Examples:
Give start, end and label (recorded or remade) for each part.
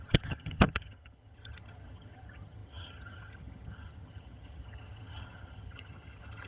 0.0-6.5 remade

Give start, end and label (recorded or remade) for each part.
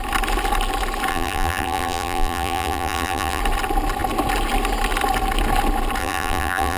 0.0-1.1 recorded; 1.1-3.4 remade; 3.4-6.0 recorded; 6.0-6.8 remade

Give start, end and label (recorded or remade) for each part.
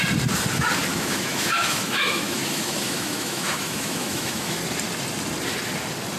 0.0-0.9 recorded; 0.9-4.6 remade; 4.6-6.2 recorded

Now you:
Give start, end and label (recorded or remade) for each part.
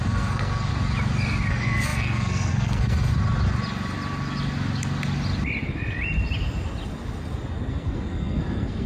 0.0-0.7 remade; 0.7-1.5 recorded; 1.5-3.1 remade; 3.1-7.7 recorded; 7.7-8.9 remade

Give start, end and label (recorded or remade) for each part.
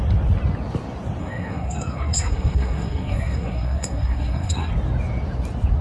0.0-1.2 recorded; 1.2-4.7 remade; 4.7-5.8 recorded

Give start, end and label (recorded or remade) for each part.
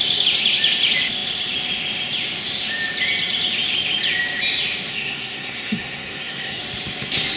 0.0-4.9 recorded; 4.9-6.6 remade; 6.6-7.4 recorded